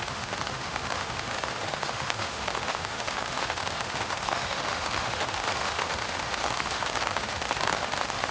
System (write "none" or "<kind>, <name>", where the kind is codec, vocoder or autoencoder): autoencoder, DAC-VAE